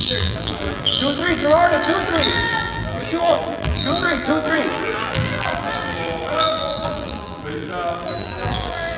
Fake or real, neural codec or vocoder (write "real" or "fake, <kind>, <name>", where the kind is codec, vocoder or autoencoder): fake, vocoder, BigVGAN v2